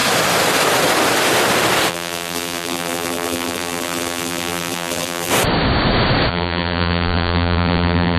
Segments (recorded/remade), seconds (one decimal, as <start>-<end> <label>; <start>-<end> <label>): 0.0-1.9 recorded; 1.9-5.3 remade; 5.3-6.3 recorded; 6.3-8.2 remade